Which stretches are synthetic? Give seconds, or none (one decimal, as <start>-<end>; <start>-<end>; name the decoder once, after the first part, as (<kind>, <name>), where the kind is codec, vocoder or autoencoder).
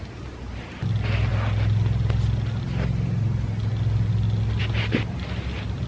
none